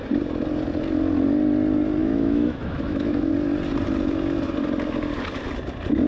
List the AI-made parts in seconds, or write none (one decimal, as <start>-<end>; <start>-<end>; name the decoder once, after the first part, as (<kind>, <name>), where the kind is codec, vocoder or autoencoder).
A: 2.0-3.3 (autoencoder, DAC-VAE)